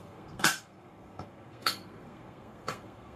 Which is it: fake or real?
fake